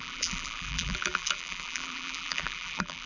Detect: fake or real fake